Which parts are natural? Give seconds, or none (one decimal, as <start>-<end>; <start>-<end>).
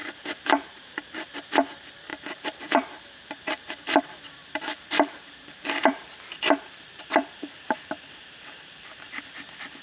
1.3-2.1; 4.0-4.4; 9.2-9.8